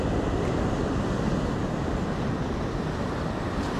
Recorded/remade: recorded